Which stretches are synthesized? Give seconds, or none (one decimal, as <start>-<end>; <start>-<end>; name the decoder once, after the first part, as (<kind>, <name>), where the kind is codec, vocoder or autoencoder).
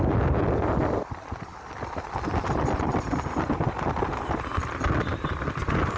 0.0-6.0 (vocoder, BigVGAN v2)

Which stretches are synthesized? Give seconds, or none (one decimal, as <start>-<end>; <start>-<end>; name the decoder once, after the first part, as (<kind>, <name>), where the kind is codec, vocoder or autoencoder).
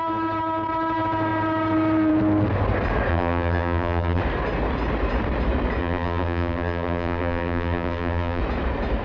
3.1-4.2 (vocoder, BigVGAN v2); 5.8-8.4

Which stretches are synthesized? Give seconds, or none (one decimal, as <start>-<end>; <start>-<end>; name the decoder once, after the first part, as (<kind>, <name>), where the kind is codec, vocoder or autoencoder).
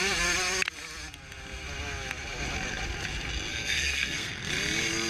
3.5-4.5 (codec, SNAC)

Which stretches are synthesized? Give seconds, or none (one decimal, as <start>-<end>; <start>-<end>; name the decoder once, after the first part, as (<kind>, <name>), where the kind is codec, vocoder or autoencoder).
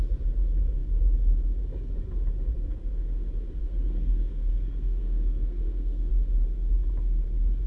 3.6-6.1 (codec, SNAC)